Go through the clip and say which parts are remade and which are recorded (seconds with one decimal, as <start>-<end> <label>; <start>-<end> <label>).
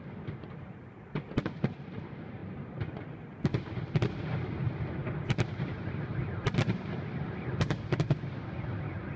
0.0-9.2 recorded